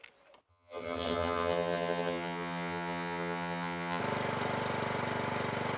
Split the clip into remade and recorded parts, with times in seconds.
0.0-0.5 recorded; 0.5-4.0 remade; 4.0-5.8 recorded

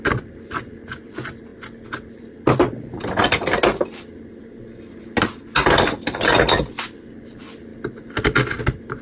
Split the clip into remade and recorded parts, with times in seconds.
0.0-9.0 recorded

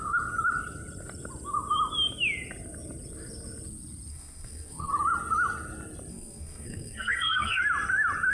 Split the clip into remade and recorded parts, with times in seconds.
0.0-4.1 recorded; 4.1-4.9 remade; 4.9-6.1 recorded; 6.1-7.6 remade; 7.6-8.3 recorded